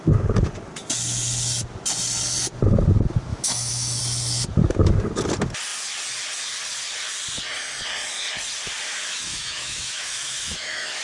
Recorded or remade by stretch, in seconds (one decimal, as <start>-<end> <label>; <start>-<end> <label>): 0.0-3.3 recorded; 3.3-4.0 remade; 4.0-9.3 recorded; 9.3-11.0 remade